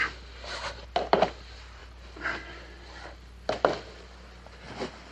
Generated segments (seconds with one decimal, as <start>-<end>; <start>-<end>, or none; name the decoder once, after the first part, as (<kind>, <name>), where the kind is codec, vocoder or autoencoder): none